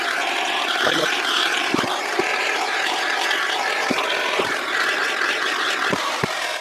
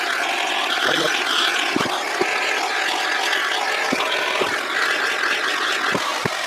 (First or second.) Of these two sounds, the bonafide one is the second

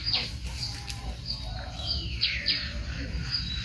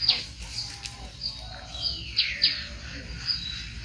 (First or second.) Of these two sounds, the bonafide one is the second